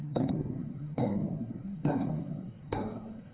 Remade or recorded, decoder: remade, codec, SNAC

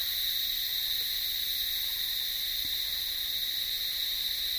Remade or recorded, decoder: recorded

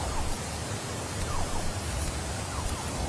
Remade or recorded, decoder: recorded